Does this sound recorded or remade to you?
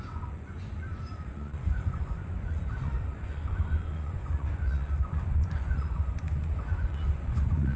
remade